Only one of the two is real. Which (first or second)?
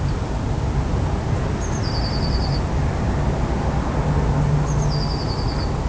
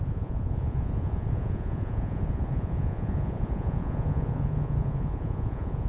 first